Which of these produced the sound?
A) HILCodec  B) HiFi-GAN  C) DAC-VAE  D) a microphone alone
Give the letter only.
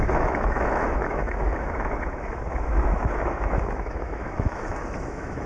C